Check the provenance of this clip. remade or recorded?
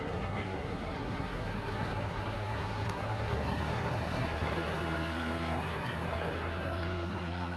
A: remade